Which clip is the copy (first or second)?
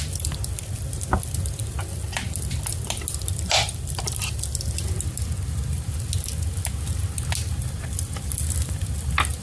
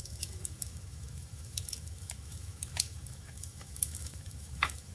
second